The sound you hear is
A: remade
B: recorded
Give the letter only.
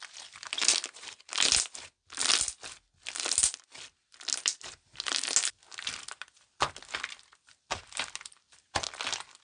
B